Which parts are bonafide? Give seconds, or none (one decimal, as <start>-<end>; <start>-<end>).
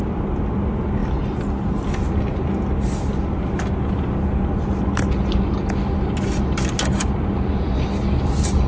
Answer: 0.0-8.7